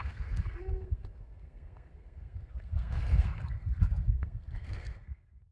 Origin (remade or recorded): remade